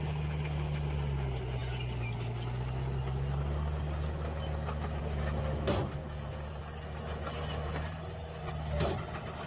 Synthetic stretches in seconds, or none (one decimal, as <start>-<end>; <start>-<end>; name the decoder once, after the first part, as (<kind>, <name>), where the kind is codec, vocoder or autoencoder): 6.0-6.6 (vocoder, Vocos)